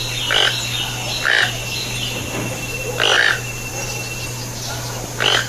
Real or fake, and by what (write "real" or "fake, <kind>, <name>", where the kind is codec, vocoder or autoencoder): real